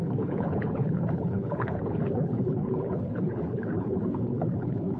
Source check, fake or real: fake